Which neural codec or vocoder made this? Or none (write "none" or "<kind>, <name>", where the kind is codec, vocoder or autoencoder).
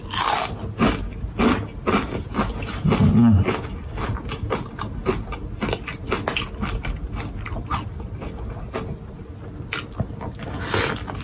none